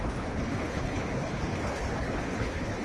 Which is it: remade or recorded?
remade